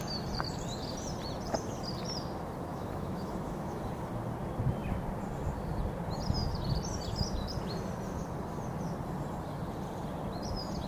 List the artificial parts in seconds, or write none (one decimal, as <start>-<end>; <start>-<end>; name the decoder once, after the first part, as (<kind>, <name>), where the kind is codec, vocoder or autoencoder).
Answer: 2.7-3.8 (autoencoder, DAC-VAE)